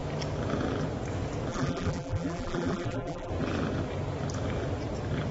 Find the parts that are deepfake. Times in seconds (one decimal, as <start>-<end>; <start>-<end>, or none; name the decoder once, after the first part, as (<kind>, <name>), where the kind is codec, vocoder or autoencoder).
1.5-3.3 (vocoder, BigVGAN v2)

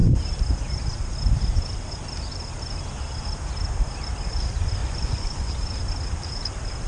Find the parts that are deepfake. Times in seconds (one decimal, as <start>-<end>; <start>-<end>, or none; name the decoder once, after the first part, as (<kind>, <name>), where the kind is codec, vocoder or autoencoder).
4.8-5.5 (vocoder, Vocos)

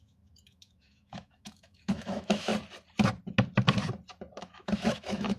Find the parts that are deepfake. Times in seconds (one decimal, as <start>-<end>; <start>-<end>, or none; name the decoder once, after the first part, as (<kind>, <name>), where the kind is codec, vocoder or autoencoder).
0.0-2.5 (autoencoder, DAC-VAE); 4.4-5.4